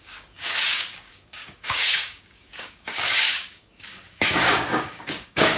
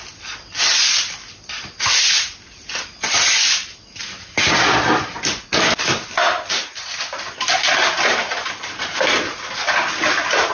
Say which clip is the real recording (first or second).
second